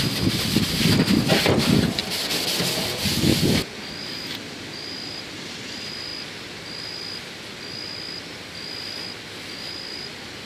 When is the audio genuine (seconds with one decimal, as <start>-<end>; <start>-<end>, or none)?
6.1-9.4